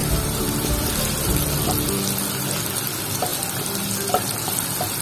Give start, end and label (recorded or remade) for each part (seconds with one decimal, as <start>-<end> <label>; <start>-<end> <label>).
0.0-0.9 remade; 0.9-5.0 recorded